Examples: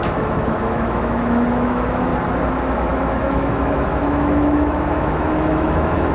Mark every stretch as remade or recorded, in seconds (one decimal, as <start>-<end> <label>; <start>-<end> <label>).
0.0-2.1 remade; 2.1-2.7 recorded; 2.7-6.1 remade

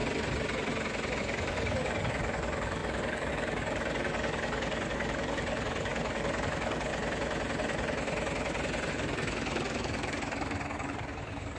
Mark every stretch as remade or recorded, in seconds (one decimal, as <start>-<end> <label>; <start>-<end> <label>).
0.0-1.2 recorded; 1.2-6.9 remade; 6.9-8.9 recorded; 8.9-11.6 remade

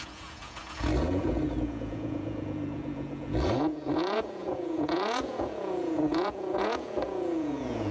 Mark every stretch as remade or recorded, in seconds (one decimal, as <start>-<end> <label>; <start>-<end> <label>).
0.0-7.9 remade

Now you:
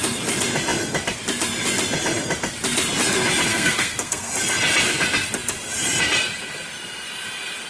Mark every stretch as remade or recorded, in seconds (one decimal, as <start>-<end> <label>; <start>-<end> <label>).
0.0-3.5 recorded; 3.5-4.3 remade; 4.3-7.7 recorded

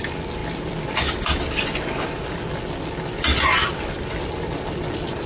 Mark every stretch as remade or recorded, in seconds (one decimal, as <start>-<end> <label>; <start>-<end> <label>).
0.0-5.3 recorded